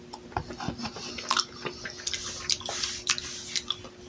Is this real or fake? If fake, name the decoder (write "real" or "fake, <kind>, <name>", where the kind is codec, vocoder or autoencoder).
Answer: real